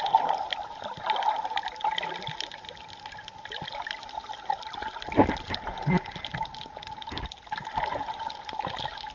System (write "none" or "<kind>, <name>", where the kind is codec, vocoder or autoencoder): none